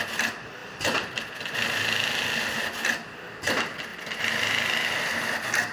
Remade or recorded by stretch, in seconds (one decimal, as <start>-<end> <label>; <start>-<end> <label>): 0.0-5.7 recorded